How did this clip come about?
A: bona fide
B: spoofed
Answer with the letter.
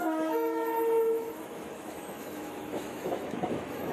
B